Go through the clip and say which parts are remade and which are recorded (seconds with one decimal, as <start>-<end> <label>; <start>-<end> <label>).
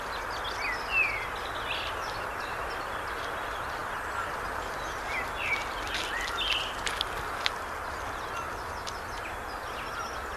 0.0-10.4 recorded